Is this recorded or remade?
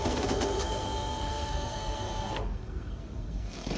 remade